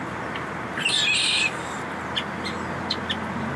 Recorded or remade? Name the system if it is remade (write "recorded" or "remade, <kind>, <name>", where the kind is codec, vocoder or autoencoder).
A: recorded